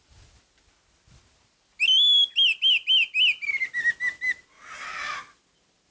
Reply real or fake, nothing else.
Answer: real